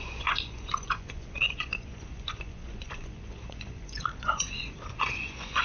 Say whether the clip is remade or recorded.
remade